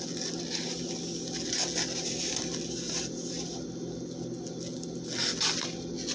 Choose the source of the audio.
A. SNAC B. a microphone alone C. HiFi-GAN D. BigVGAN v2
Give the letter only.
B